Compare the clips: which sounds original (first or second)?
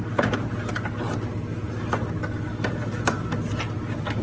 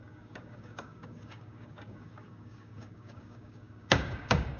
first